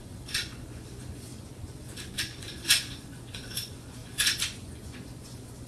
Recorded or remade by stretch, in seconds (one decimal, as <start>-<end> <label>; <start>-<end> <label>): 0.0-5.7 remade